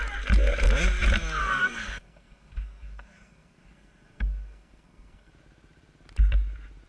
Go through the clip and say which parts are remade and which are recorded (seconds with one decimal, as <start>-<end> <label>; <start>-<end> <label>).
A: 0.0-1.4 recorded; 1.4-5.3 remade; 5.3-6.9 recorded